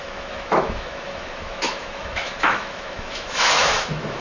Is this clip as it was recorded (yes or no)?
no